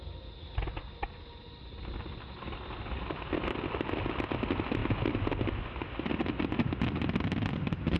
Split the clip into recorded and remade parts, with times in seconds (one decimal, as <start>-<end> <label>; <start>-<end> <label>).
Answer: 0.0-8.0 recorded